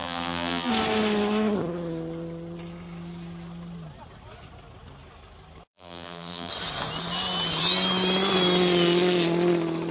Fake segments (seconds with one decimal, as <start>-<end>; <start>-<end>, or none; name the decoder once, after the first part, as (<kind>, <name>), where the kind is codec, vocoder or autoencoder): 0.0-0.7 (vocoder, BigVGAN v2); 5.7-6.5